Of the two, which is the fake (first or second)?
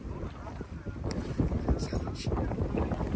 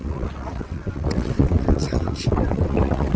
second